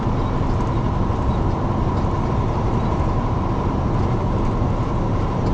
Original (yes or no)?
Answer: yes